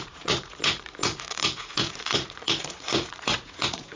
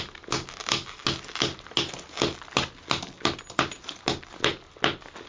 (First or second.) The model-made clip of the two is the first